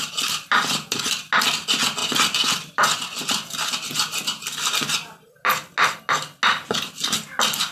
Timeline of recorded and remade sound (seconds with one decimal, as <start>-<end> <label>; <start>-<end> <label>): 0.0-7.7 recorded